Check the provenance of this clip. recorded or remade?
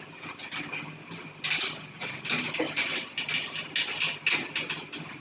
recorded